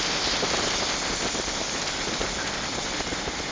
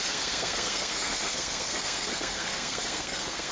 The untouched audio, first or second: first